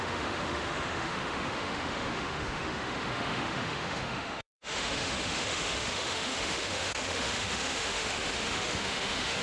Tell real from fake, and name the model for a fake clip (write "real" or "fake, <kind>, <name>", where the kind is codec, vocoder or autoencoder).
fake, autoencoder, DAC-VAE